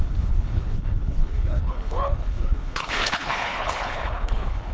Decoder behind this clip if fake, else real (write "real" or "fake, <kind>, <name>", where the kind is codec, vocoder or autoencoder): fake, codec, HILCodec